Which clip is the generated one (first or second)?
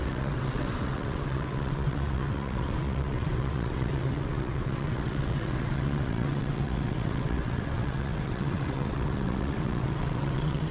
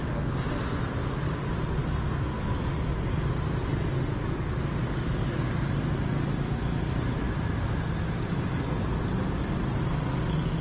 first